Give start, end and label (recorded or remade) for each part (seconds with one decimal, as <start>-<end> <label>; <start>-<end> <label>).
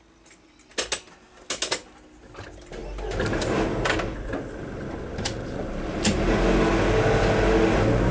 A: 0.0-8.1 recorded